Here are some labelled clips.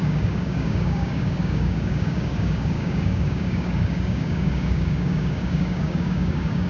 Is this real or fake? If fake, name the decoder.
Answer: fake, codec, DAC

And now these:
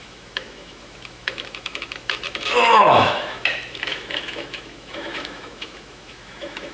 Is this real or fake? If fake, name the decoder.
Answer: fake, autoencoder, DAC-VAE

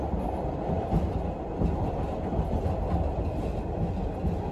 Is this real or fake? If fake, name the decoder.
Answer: real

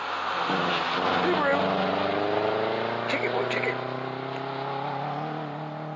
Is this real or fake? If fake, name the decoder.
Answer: real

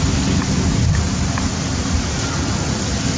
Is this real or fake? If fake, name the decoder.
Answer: real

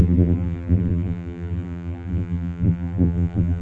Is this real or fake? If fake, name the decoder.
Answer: fake, vocoder, BigVGAN v2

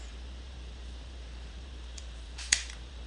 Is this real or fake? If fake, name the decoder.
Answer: fake, vocoder, BigVGAN v2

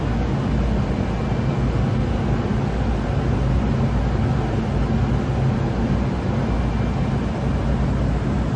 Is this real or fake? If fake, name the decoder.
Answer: real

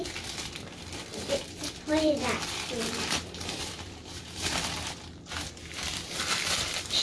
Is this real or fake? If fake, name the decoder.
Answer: fake, vocoder, BigVGAN v2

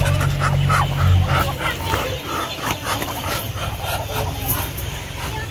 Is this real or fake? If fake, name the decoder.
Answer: real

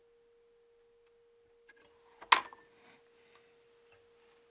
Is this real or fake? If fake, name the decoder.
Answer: real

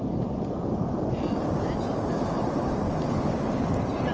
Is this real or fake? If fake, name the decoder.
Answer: real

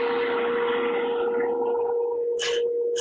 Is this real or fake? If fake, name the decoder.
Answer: real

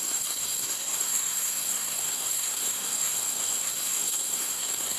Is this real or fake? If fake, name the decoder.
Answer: fake, codec, SNAC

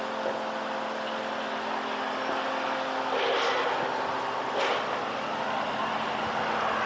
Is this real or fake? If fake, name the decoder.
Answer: real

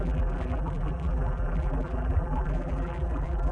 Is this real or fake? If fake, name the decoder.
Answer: fake, vocoder, BigVGAN v2